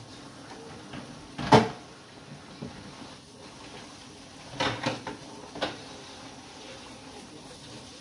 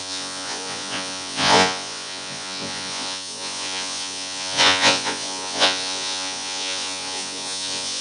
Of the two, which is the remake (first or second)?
second